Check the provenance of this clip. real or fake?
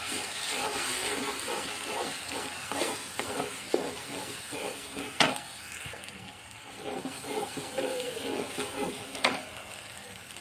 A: fake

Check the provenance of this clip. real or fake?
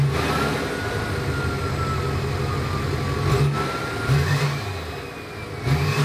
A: real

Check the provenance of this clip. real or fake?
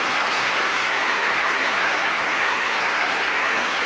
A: fake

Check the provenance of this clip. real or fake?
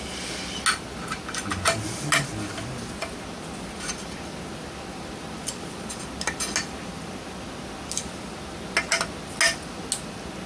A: real